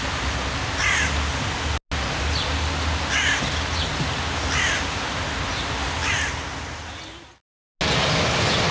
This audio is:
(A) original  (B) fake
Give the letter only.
A